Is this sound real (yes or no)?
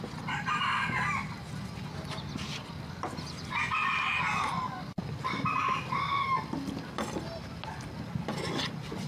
yes